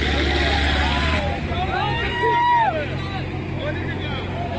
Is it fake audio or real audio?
real